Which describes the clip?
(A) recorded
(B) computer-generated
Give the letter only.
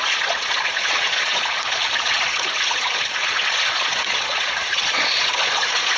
B